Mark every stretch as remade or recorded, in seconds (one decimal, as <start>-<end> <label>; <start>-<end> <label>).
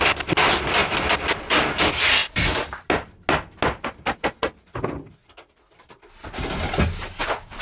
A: 0.0-7.6 recorded